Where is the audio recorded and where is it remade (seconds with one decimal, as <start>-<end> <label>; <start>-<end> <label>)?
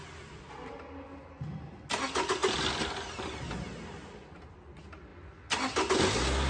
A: 0.0-6.5 recorded